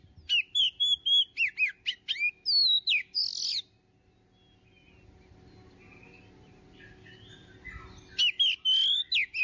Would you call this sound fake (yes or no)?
no